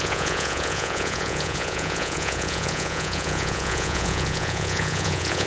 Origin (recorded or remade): remade